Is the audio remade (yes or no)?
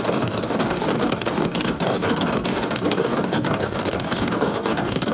yes